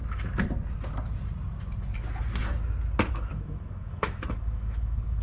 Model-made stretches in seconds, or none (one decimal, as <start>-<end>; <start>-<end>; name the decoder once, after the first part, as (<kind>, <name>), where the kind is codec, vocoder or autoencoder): 3.1-5.2 (autoencoder, DAC-VAE)